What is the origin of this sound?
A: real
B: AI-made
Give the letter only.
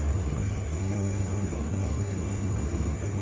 B